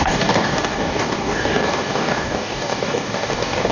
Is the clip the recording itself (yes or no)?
no